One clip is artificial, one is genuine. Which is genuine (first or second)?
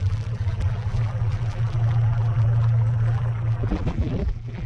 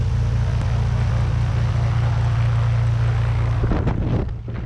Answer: second